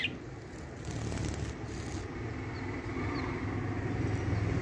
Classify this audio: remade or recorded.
recorded